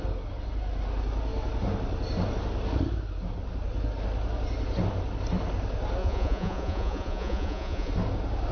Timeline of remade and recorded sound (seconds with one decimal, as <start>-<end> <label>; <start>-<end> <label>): 0.0-6.0 recorded; 6.0-7.9 remade; 7.9-8.5 recorded